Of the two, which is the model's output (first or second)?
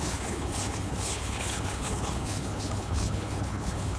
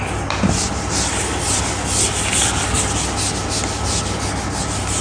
first